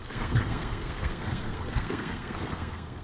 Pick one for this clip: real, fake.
fake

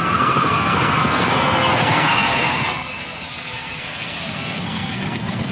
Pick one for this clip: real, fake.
fake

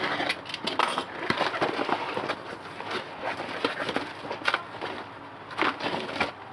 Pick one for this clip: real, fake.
real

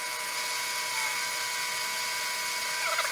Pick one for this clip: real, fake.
real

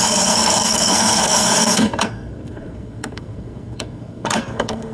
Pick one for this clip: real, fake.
fake